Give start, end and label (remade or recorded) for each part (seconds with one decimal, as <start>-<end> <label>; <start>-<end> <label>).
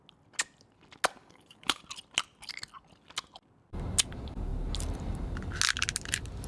0.0-1.2 recorded; 1.2-1.8 remade; 1.8-6.5 recorded